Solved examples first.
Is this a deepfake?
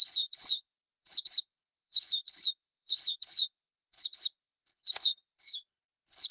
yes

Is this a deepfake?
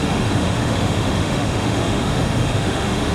yes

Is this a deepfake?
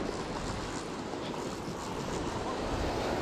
no